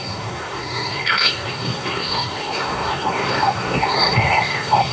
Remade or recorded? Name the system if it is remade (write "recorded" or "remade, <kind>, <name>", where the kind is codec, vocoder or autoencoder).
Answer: remade, codec, SNAC